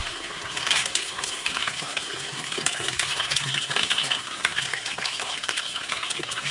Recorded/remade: remade